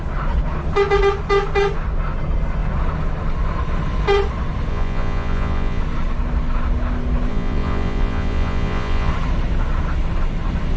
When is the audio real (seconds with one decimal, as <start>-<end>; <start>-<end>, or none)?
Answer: 0.0-4.7; 5.8-7.3; 9.1-10.8